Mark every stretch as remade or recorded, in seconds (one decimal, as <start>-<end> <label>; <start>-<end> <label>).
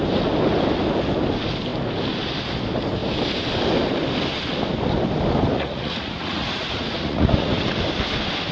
0.0-5.5 recorded; 5.5-7.6 remade; 7.6-8.5 recorded